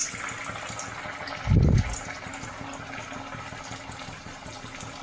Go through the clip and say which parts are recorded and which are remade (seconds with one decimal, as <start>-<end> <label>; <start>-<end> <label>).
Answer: 0.0-5.0 recorded